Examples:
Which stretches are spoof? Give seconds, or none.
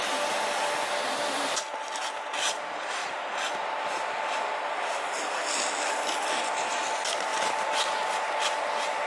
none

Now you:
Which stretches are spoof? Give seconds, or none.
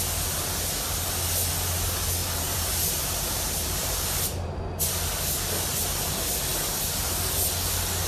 2.2-4.6 (vocoder, BigVGAN v2)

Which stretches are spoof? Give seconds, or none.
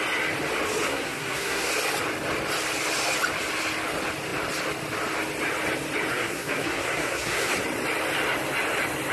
0.9-1.7 (codec, SNAC); 6.1-7.5